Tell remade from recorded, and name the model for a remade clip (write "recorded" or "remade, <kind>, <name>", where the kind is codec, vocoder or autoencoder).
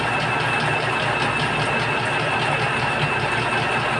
recorded